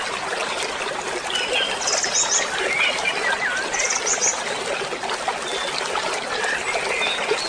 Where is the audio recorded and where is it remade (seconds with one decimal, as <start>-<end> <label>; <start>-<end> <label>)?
0.0-7.5 recorded